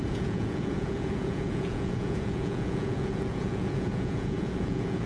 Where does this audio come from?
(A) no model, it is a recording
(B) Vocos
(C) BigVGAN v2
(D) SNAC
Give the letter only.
B